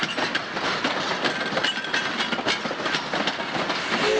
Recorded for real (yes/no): yes